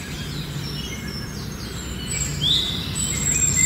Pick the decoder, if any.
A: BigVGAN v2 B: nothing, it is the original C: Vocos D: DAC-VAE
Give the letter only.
B